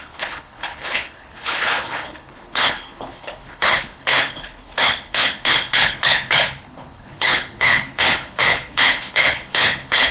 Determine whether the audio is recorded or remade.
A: remade